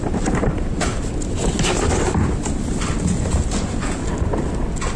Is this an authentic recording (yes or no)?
yes